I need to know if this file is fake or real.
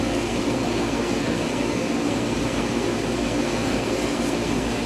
fake